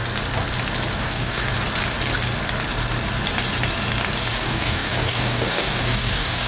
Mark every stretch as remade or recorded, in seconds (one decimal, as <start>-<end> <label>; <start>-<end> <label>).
0.0-1.0 recorded; 1.0-1.5 remade; 1.5-4.3 recorded; 4.3-6.5 remade

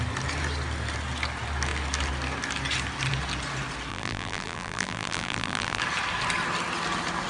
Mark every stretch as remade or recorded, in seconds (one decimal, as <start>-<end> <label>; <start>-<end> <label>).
0.0-3.9 recorded; 3.9-5.8 remade; 5.8-7.3 recorded